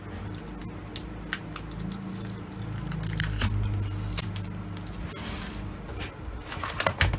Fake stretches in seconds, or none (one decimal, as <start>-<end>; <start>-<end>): none